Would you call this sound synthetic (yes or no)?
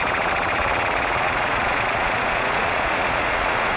yes